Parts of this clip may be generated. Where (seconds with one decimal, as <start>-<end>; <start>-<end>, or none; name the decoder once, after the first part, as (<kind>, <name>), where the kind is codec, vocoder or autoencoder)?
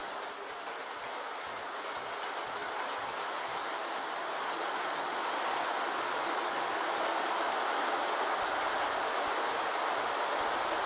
none